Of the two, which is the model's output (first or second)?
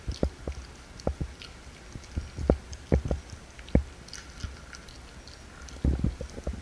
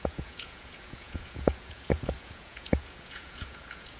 second